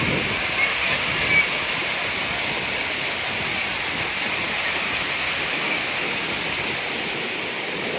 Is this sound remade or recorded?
recorded